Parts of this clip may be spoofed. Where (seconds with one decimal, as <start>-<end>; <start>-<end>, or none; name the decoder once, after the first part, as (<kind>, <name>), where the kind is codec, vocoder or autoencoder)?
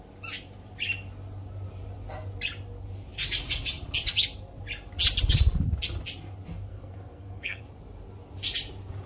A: 6.7-7.6 (codec, SNAC)